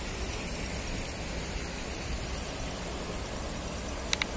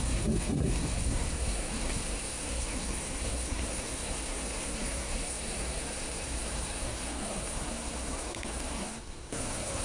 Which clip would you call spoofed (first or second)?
second